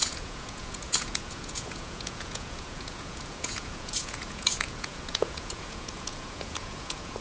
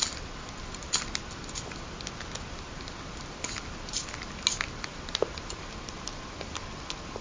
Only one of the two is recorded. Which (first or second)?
second